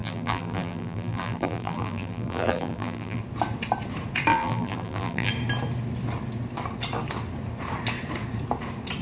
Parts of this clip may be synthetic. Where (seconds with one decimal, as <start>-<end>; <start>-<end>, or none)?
0.0-3.2; 4.3-5.3